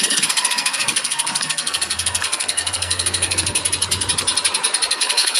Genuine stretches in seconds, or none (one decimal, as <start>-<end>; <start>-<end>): 3.6-4.9